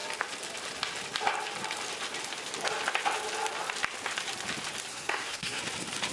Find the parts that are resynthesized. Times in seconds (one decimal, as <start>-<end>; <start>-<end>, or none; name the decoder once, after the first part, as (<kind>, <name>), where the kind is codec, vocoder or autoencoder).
4.9-5.6 (codec, SNAC)